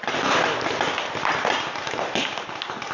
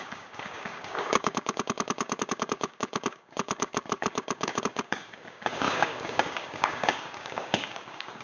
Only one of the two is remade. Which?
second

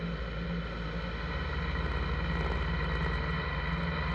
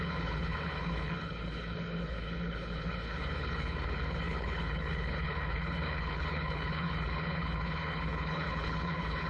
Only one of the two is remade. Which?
second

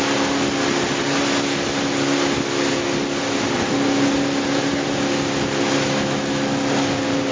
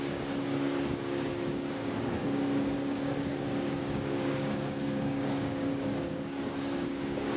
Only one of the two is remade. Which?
second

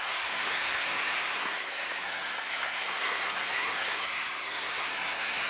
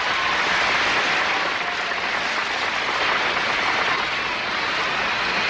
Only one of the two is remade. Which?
first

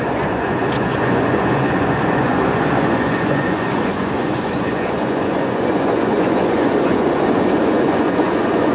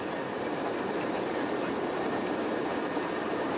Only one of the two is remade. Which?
first